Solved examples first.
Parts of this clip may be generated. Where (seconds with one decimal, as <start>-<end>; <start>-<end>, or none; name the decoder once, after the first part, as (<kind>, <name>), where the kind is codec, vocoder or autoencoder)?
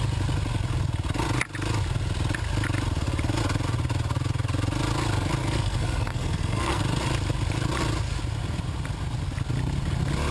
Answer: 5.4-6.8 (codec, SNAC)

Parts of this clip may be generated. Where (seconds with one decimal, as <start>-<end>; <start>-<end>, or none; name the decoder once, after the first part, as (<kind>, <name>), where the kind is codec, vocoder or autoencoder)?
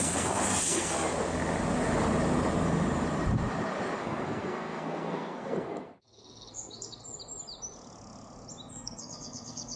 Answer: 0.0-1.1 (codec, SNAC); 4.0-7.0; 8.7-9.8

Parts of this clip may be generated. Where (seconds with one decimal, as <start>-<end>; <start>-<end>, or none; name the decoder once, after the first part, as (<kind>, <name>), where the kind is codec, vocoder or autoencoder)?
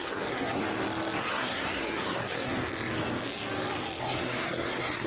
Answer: 0.0-0.6 (codec, SNAC); 1.3-2.6; 4.0-5.1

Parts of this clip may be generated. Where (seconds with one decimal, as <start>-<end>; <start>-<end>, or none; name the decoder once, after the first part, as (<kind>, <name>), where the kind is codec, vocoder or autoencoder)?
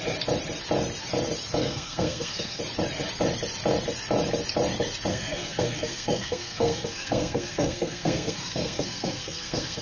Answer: 1.6-2.6 (codec, SNAC); 5.1-9.8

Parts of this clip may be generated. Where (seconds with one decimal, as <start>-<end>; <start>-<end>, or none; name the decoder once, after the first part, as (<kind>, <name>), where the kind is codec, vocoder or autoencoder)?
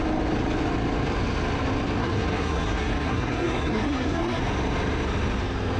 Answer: 2.0-4.4 (codec, SNAC)